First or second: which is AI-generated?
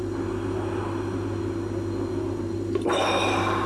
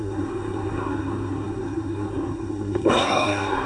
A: second